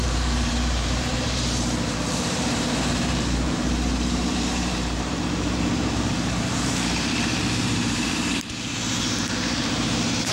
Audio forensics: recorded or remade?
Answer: remade